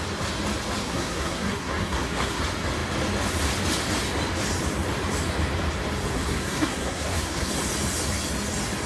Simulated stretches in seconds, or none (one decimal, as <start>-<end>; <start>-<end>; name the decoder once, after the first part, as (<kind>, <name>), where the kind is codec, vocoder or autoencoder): 0.8-2.4 (codec, SNAC); 6.1-7.5